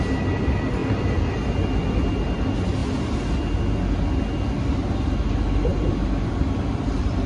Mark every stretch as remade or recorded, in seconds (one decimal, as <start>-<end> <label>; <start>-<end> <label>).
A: 0.0-5.7 recorded; 5.7-7.3 remade